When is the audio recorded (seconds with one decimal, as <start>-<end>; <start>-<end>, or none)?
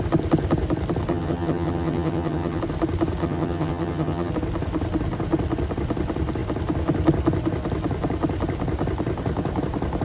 0.0-1.1; 2.6-3.2; 4.3-10.0